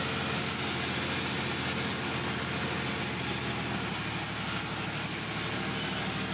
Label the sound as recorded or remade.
recorded